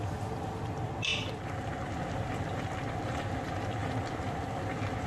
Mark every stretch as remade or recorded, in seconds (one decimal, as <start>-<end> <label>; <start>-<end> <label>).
0.0-5.1 recorded